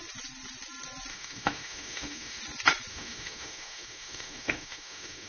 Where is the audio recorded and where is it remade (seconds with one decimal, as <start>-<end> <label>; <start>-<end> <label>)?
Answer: 0.0-1.1 recorded; 1.1-2.4 remade; 2.4-2.9 recorded; 2.9-5.3 remade